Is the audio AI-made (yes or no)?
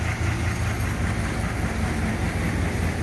no